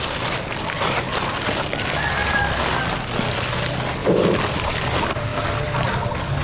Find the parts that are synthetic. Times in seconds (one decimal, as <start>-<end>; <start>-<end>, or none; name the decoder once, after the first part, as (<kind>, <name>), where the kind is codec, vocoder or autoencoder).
4.0-4.8 (vocoder, BigVGAN v2); 5.3-5.9